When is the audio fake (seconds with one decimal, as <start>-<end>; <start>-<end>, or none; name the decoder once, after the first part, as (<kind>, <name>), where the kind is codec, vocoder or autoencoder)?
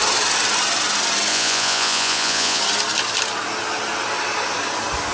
1.3-2.6 (vocoder, Vocos)